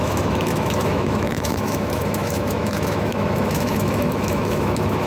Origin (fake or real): fake